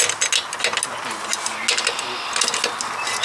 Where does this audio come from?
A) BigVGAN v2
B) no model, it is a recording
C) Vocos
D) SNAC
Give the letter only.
B